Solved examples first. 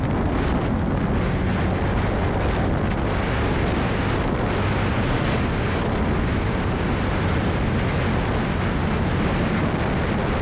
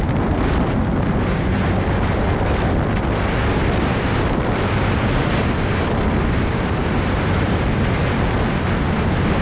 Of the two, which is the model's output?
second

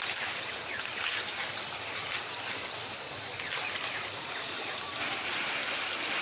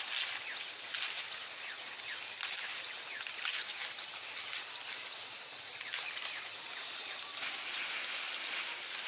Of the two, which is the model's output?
first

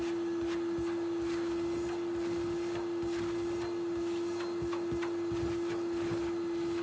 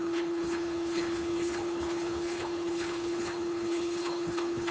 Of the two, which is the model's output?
second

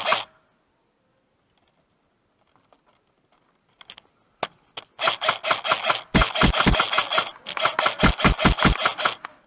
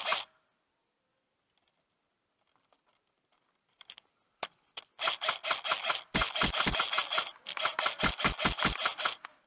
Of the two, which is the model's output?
second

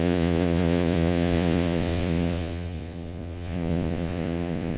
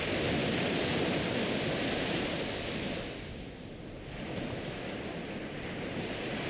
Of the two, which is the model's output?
first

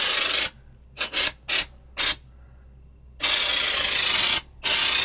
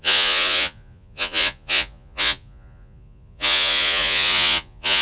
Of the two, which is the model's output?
second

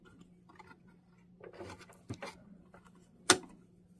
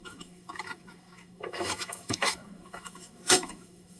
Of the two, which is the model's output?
second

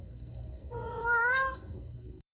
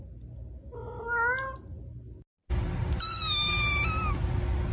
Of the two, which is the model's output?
first